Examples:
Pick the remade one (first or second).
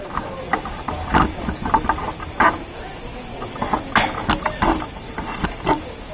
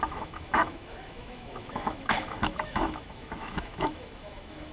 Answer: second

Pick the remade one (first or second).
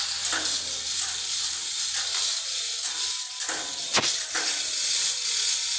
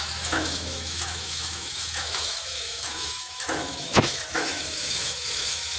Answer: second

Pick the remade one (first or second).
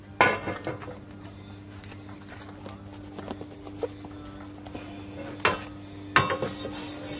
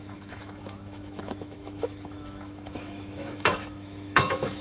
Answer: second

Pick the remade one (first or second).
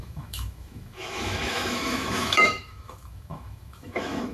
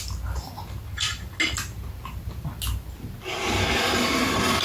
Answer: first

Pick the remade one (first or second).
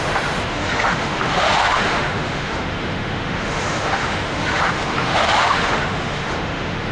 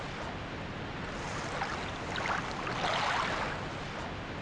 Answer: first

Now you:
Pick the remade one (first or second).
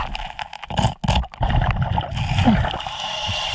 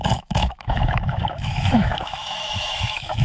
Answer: second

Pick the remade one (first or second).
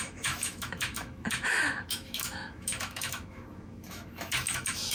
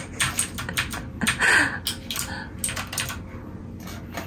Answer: first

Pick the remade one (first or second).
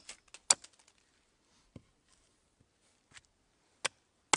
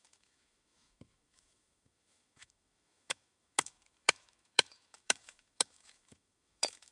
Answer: second